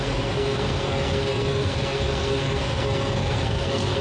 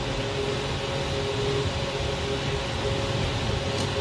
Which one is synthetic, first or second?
first